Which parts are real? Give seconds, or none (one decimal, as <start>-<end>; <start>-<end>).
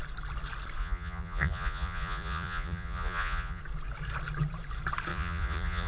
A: 0.0-0.8; 3.6-5.1